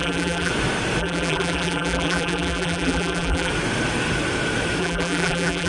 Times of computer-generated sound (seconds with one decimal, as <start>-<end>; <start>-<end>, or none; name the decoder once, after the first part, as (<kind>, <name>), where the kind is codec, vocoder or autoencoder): 0.0-0.5 (vocoder, BigVGAN v2); 1.0-3.5; 4.8-5.7